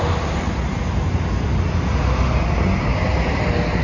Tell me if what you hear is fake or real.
real